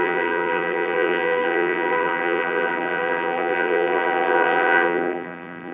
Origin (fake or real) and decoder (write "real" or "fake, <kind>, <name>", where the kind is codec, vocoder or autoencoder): fake, vocoder, BigVGAN v2